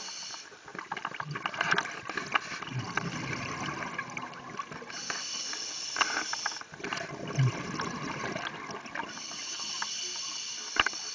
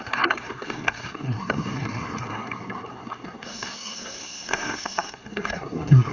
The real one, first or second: first